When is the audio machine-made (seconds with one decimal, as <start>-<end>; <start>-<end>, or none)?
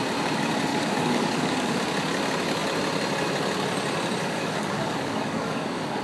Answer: 0.7-1.8; 4.2-6.0